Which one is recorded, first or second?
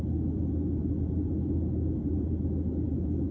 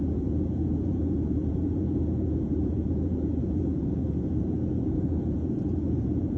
first